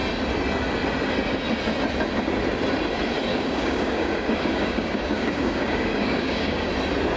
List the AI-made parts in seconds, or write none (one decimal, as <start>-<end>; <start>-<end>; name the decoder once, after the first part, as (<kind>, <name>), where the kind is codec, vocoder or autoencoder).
3.3-6.7 (codec, DAC)